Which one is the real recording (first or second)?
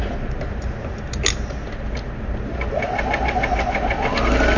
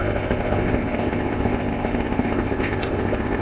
first